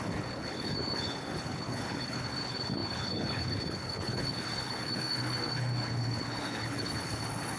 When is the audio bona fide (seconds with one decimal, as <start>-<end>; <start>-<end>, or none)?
none